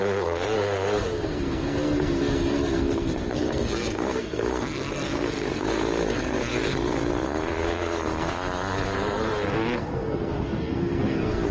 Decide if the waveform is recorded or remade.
remade